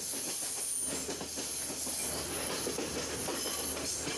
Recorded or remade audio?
recorded